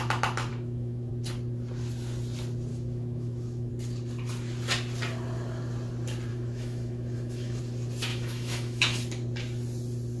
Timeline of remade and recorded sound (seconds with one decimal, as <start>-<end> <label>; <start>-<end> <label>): 0.0-0.5 recorded; 0.5-1.1 remade; 1.1-2.7 recorded; 2.7-3.7 remade; 3.7-6.3 recorded; 6.3-7.6 remade; 7.6-8.1 recorded; 8.1-9.0 remade; 9.0-10.2 recorded